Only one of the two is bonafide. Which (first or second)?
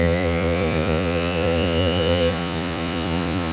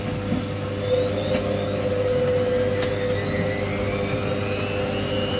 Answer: second